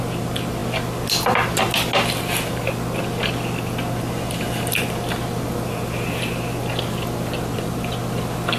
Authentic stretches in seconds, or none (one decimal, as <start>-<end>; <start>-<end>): 0.0-8.6